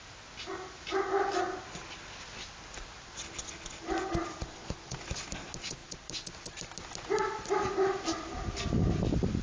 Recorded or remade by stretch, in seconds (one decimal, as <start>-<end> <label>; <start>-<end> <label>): 0.0-9.4 recorded